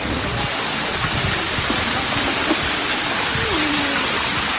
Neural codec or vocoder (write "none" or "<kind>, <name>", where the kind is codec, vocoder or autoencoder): vocoder, BigVGAN v2